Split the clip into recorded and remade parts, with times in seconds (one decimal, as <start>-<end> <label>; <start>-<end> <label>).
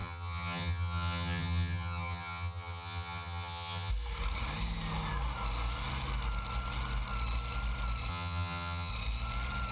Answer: 0.0-3.9 remade; 3.9-8.1 recorded; 8.1-8.9 remade; 8.9-9.7 recorded